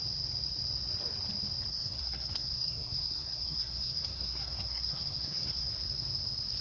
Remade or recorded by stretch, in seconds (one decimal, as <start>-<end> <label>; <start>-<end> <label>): 0.0-1.7 recorded; 1.7-5.7 remade; 5.7-6.6 recorded